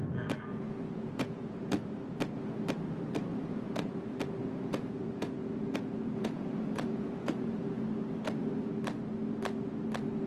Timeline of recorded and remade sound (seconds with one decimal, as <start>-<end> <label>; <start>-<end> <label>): 0.0-0.5 recorded; 0.5-1.7 remade; 1.7-3.3 recorded; 3.3-3.9 remade; 3.9-4.4 recorded; 4.4-7.8 remade; 7.8-10.3 recorded